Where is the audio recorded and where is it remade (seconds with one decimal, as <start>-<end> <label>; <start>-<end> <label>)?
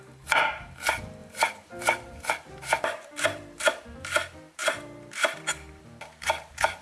0.0-6.8 remade